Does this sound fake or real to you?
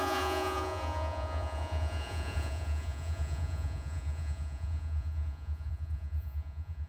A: fake